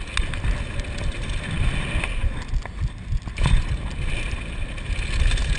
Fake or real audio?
real